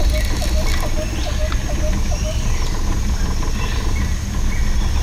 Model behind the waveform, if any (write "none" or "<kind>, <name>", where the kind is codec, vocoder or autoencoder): none